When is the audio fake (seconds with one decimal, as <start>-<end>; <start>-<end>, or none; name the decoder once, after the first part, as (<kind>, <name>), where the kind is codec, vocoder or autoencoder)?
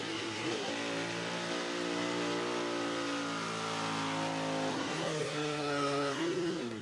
0.0-0.7 (codec, SNAC); 4.7-6.8